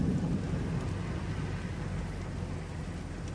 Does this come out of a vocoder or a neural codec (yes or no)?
no